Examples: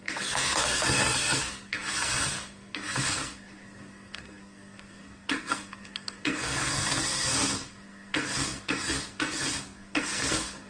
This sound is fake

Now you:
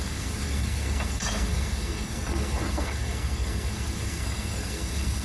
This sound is fake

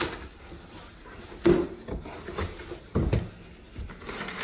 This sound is real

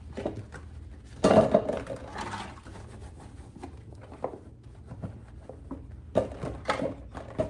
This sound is real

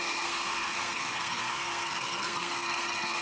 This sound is fake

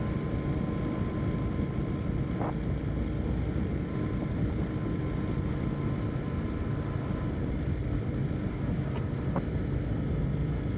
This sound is real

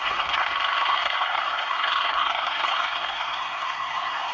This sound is fake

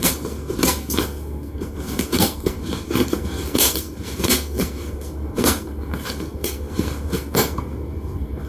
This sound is fake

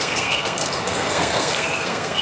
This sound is fake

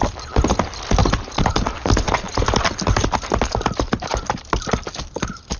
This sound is real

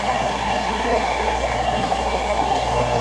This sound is fake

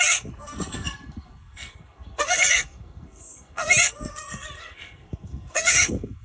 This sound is fake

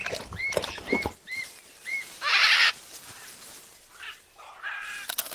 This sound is real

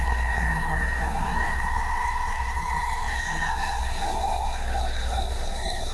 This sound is fake